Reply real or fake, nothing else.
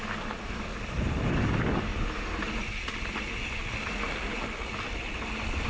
real